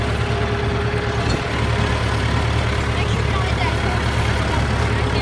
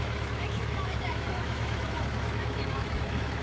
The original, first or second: first